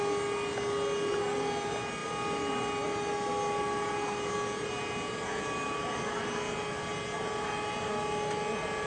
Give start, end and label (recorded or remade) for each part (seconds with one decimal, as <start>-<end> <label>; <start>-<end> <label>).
0.0-8.9 recorded